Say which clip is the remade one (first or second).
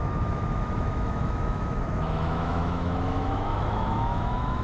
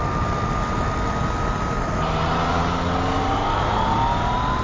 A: first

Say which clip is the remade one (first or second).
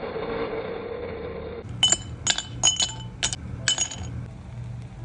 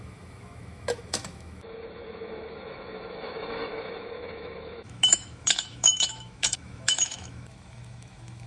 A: second